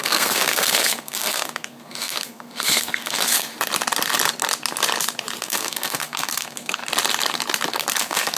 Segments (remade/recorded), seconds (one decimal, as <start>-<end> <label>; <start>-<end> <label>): 0.0-3.5 remade; 3.5-5.4 recorded; 5.4-6.8 remade; 6.8-8.0 recorded; 8.0-8.4 remade

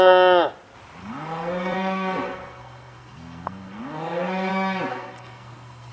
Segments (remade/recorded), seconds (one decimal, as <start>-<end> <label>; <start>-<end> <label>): 0.0-1.0 recorded; 1.0-4.5 remade; 4.5-4.9 recorded; 4.9-5.9 remade

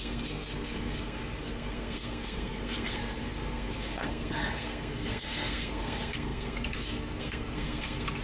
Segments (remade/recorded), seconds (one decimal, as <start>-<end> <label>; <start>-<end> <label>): 0.0-8.2 remade

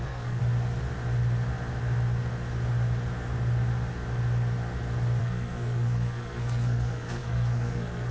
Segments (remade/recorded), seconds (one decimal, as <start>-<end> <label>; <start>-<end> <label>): 0.0-0.4 remade; 0.4-5.2 recorded; 5.2-8.1 remade